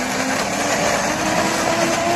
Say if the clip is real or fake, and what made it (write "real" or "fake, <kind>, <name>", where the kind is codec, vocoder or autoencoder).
real